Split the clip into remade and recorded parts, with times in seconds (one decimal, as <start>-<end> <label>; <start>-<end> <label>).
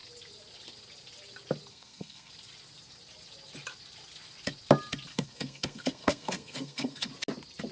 0.0-1.7 recorded; 1.7-2.3 remade; 2.3-5.1 recorded; 5.1-7.1 remade; 7.1-7.7 recorded